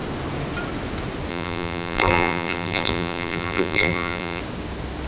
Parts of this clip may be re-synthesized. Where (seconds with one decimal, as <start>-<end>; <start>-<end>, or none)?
1.3-4.4